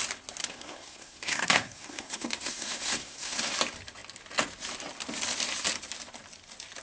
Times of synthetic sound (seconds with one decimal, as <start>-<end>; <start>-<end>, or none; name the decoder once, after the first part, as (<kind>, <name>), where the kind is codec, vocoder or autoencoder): 0.4-3.5 (codec, SNAC)